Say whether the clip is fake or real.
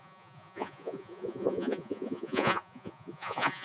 fake